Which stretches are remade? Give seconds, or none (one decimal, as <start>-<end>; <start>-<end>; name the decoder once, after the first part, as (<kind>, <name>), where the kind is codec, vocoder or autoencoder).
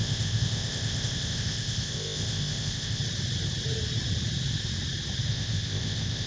0.0-3.0 (codec, ZipCodec); 5.3-6.3